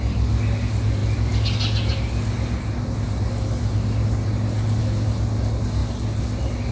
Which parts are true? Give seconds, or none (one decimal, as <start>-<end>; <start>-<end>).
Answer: 0.0-6.7